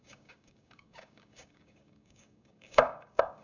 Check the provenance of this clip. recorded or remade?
remade